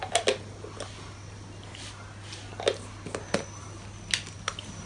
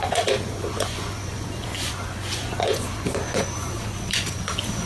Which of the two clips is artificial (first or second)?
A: second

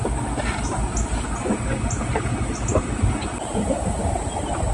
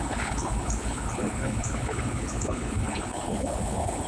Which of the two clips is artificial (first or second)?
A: second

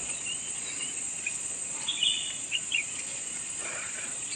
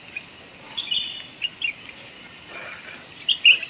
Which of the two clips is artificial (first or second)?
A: first